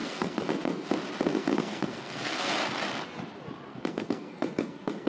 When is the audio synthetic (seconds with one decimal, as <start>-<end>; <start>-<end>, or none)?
0.0-0.9; 1.3-2.5; 3.7-5.1